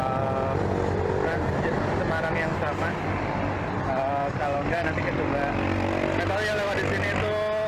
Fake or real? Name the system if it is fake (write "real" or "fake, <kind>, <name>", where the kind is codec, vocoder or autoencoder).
real